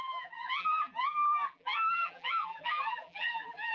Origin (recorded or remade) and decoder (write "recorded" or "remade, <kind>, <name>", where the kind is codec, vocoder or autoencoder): remade, vocoder, BigVGAN v2